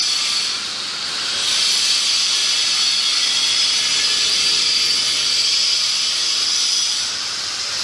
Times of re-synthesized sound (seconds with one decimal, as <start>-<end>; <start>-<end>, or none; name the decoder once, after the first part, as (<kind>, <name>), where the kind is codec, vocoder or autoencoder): none